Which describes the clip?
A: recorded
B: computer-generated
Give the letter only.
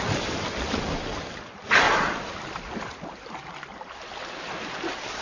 A